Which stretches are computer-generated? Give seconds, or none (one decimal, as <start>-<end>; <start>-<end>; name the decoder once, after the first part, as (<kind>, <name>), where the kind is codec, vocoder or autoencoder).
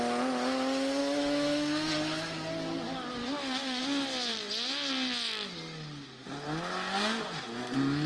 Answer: 1.0-1.9 (autoencoder, DAC-VAE); 3.2-3.8